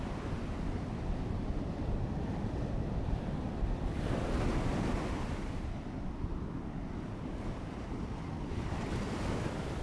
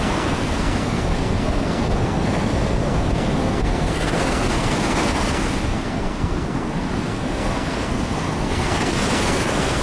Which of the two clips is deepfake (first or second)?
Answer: second